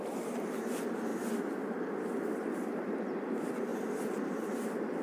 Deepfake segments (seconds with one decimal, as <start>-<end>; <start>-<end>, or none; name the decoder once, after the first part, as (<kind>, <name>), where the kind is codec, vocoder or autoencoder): none